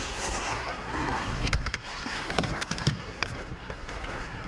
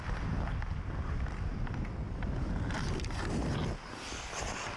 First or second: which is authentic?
second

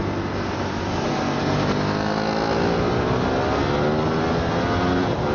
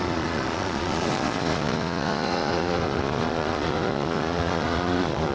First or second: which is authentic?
first